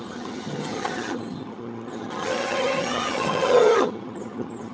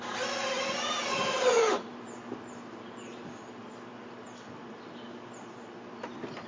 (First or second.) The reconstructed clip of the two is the first